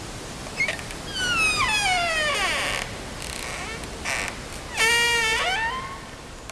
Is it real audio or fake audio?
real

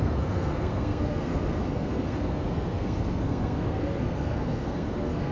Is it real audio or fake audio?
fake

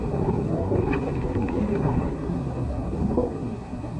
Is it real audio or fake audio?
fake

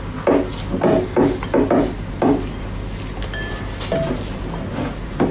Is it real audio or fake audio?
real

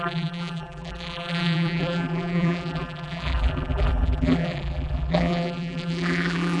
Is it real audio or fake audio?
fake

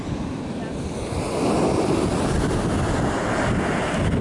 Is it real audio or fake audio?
real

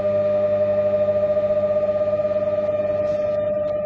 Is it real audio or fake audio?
real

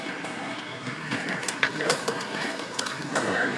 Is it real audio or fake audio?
fake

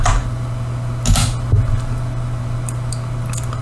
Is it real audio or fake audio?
real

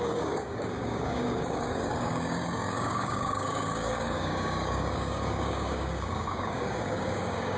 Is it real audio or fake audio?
fake